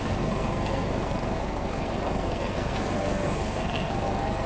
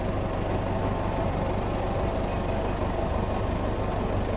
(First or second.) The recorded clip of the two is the second